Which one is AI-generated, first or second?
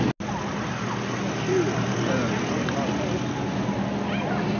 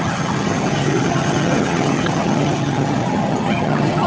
second